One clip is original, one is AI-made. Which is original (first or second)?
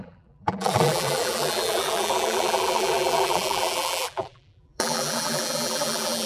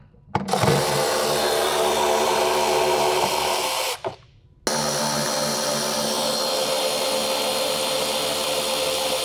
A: second